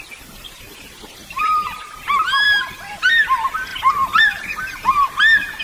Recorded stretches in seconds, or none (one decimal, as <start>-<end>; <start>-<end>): none